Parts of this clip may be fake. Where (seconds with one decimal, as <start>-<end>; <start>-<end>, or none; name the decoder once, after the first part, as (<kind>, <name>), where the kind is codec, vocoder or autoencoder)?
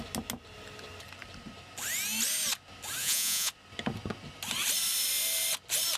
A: 3.0-3.5 (vocoder, Vocos)